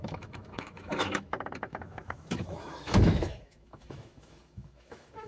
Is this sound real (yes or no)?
no